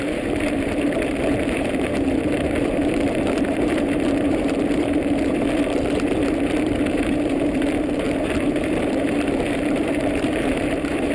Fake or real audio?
fake